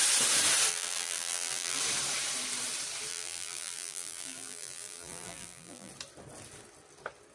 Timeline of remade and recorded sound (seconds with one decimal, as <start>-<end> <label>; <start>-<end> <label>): 0.0-0.7 recorded; 0.7-1.8 remade; 1.8-3.1 recorded; 3.1-5.9 remade; 5.9-7.3 recorded